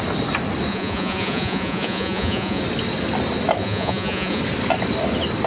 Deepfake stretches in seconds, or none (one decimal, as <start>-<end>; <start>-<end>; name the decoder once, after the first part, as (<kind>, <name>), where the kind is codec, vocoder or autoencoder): 0.7-2.6 (vocoder, Vocos); 3.6-4.4